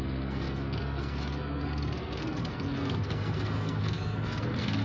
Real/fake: fake